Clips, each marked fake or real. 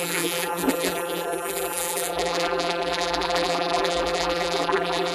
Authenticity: fake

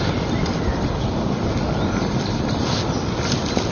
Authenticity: fake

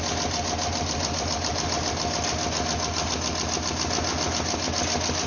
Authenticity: real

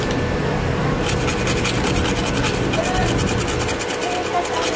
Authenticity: fake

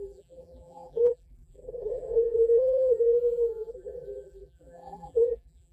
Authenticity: fake